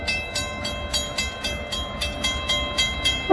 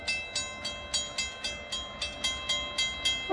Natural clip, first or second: second